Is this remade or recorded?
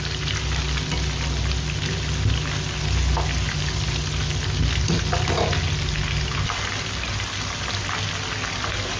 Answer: recorded